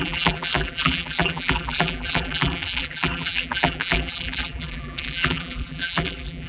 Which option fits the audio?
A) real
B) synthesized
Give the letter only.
B